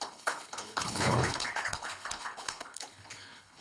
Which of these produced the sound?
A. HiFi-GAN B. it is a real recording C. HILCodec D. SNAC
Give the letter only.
C